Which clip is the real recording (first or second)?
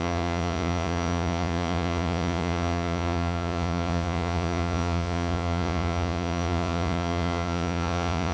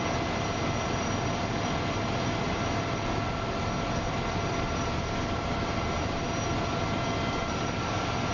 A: second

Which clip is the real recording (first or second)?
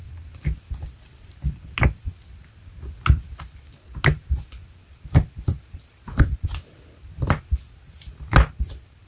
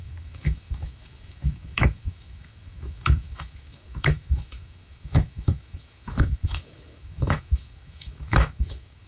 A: first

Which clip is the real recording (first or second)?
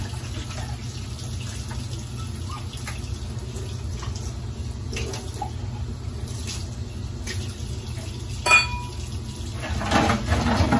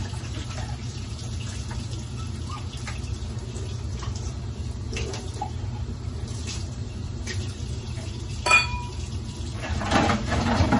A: first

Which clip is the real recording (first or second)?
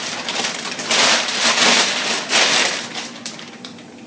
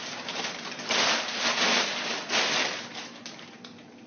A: second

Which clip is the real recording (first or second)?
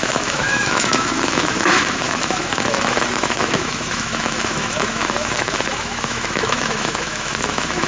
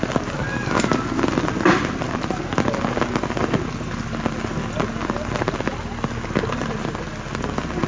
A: second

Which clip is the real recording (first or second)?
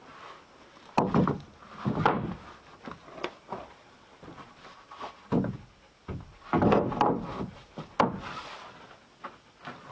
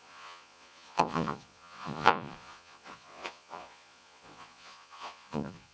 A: first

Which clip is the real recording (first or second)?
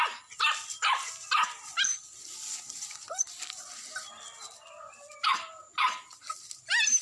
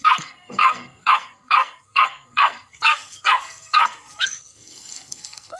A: first